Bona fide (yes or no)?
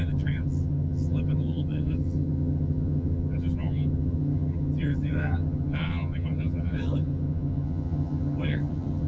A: no